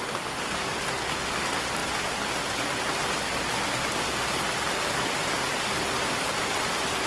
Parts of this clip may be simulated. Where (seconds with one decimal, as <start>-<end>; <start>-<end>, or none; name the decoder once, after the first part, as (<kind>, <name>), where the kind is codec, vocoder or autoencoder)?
none